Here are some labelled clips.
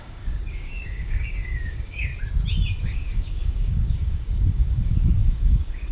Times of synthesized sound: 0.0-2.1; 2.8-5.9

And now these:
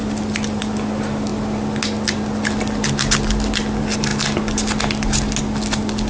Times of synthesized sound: none

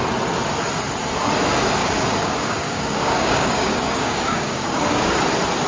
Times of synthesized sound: 1.8-5.2

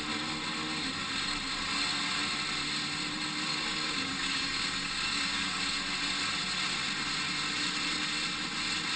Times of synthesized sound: 3.5-5.6